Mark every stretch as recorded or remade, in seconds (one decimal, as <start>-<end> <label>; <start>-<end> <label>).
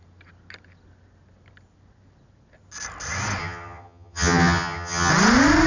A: 0.0-3.4 recorded; 3.4-5.1 remade; 5.1-5.7 recorded